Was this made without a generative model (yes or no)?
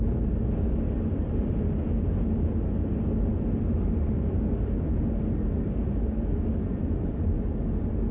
yes